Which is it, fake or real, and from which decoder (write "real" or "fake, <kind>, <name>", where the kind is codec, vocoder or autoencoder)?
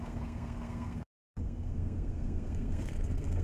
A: fake, codec, SNAC